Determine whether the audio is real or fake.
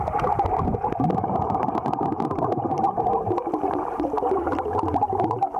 fake